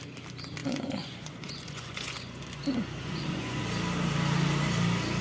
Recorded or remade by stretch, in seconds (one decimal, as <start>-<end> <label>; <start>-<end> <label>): 0.0-0.6 recorded; 0.6-3.6 remade; 3.6-5.2 recorded